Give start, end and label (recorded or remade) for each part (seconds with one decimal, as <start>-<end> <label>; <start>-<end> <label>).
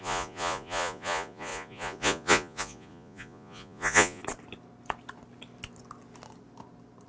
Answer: 0.0-4.2 remade; 4.2-7.1 recorded